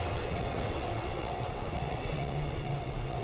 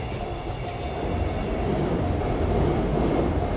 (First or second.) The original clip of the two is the second